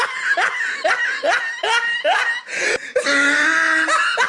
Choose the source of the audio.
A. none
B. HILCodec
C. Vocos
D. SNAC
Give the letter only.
A